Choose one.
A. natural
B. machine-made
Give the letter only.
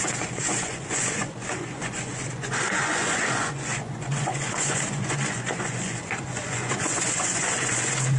B